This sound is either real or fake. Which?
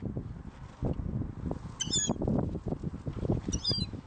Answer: real